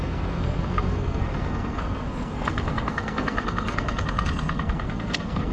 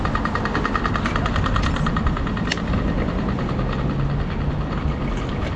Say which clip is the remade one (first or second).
first